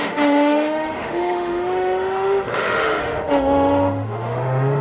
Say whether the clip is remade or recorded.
remade